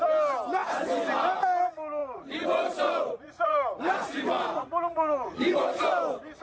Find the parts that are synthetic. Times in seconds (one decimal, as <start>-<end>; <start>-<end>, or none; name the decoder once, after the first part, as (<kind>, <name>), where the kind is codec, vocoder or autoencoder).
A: 2.0-5.8 (vocoder, Vocos)